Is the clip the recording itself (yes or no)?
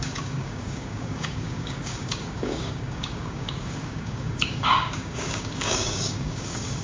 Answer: no